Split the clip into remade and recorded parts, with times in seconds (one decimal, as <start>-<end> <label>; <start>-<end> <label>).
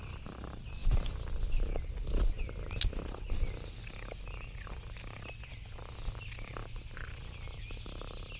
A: 0.0-8.4 recorded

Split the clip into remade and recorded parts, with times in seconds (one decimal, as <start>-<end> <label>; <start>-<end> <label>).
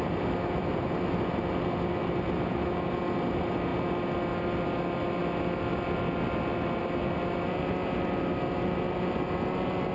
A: 0.0-9.9 recorded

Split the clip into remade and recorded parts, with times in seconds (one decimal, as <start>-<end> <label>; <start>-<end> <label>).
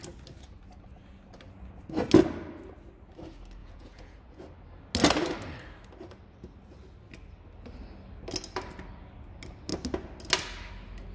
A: 0.0-3.6 recorded; 3.6-4.4 remade; 4.4-11.1 recorded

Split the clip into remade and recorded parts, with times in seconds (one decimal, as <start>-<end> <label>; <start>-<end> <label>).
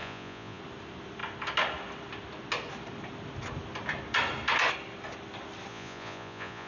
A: 0.0-0.6 remade; 0.6-5.7 recorded; 5.7-6.7 remade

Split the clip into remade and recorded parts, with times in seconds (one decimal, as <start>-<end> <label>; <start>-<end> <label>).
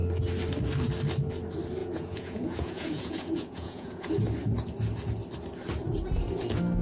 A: 0.0-1.8 recorded; 1.8-4.1 remade; 4.1-6.8 recorded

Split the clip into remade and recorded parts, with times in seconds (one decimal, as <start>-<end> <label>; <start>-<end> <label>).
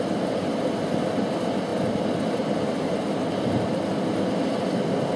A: 0.0-5.2 recorded